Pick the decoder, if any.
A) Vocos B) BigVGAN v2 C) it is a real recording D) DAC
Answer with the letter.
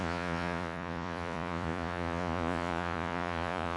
A